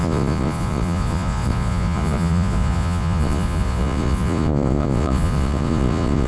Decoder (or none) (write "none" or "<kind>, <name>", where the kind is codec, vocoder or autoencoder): vocoder, Vocos